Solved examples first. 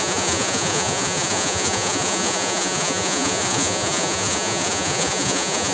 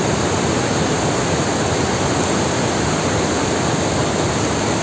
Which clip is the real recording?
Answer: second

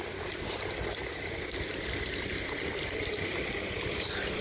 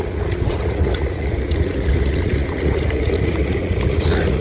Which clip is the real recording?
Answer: first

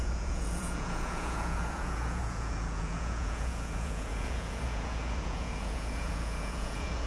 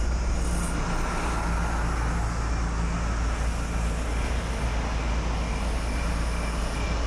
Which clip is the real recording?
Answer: second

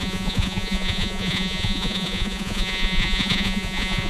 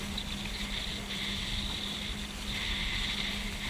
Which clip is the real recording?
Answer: second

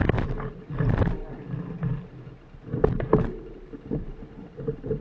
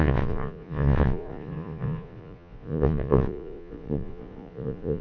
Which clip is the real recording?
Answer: first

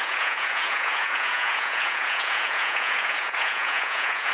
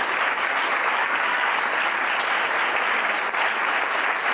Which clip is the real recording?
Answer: second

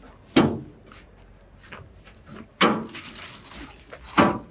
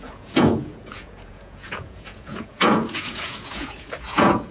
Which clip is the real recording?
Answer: first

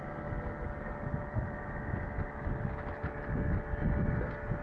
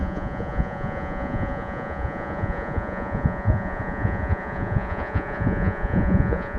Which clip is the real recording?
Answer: first